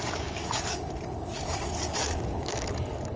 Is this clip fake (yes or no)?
yes